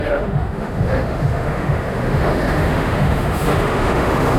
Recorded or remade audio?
remade